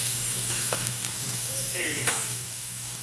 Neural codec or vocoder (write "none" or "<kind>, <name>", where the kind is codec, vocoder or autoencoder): codec, DAC